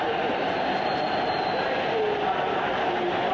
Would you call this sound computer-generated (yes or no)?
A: no